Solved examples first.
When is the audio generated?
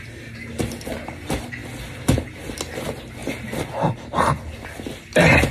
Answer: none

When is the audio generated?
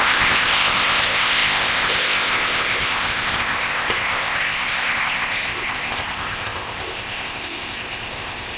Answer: 0.0-8.6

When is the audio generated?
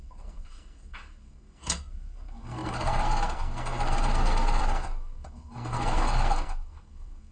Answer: 0.0-7.3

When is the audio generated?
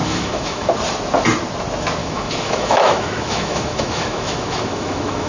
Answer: 0.0-0.7; 2.0-5.3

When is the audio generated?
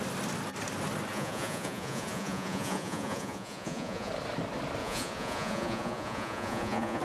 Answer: 1.1-4.1; 4.8-7.0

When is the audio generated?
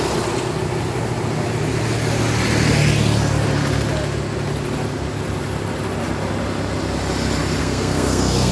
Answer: 7.6-8.5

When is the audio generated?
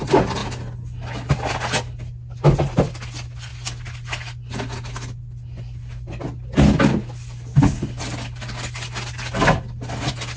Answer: none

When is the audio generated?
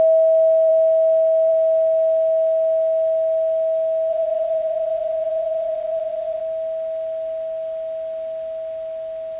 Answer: 4.1-6.4